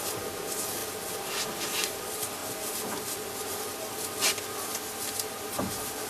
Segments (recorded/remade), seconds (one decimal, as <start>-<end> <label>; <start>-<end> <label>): 0.0-6.1 recorded

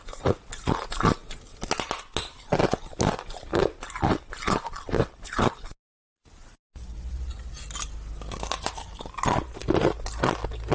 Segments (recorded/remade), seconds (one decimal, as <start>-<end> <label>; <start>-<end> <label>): 0.0-10.7 recorded

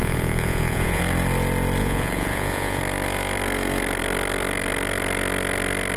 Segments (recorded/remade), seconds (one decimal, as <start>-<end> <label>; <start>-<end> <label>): 0.0-1.0 remade; 1.0-1.8 recorded; 1.8-2.8 remade; 2.8-6.0 recorded

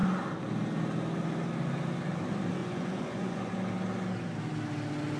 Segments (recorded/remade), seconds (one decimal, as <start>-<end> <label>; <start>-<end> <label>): 0.0-2.6 recorded; 2.6-3.5 remade; 3.5-5.2 recorded

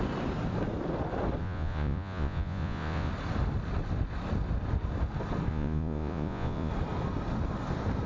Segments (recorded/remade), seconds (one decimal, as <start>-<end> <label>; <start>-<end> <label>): 0.0-1.4 recorded; 1.4-3.1 remade; 3.1-5.5 recorded; 5.5-6.7 remade; 6.7-8.1 recorded